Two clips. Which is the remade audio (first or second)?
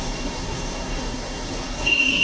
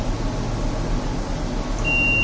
first